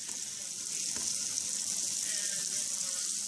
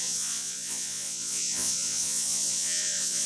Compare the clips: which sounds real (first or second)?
first